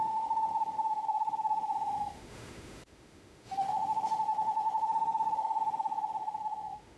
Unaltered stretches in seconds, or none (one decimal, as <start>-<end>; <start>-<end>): none